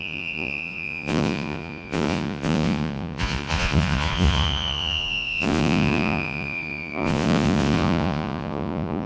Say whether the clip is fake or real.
fake